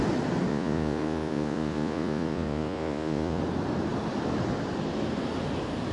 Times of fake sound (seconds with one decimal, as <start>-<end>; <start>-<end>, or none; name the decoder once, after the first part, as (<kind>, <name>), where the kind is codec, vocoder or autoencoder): 0.5-3.4 (vocoder, Vocos)